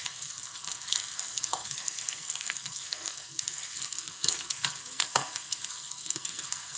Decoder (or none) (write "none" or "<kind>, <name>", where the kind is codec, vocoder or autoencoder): codec, SNAC